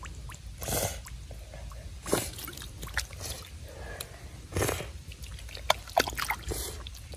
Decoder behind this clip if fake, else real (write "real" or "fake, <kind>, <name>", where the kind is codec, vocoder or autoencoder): real